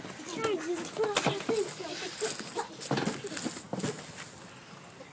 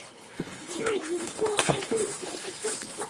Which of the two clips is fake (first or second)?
second